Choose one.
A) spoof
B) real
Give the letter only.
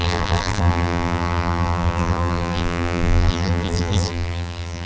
A